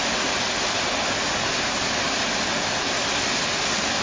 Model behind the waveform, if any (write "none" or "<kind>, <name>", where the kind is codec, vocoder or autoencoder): none